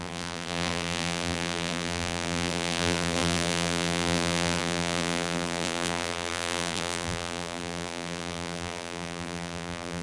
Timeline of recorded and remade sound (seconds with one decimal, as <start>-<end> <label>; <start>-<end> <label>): 0.0-10.0 remade